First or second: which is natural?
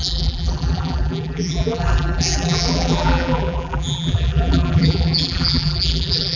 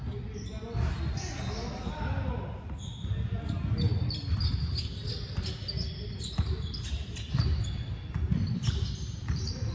second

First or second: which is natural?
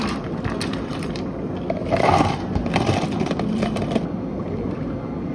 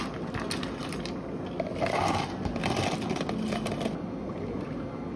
second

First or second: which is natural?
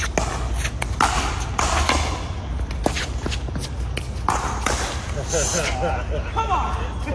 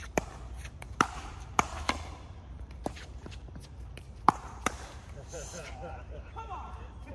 first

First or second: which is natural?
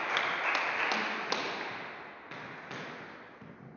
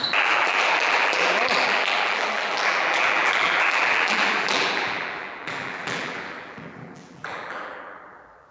first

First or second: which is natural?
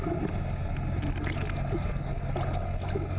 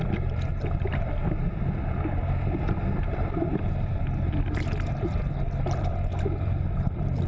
first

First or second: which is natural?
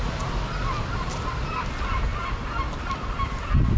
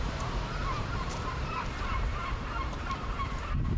first